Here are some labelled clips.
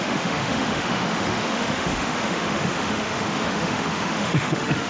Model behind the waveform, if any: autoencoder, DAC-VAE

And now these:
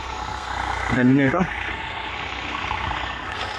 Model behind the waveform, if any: codec, SNAC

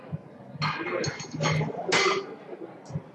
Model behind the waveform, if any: none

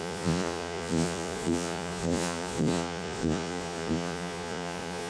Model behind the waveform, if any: vocoder, Vocos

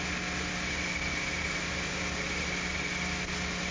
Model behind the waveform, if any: none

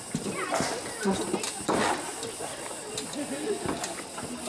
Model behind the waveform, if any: none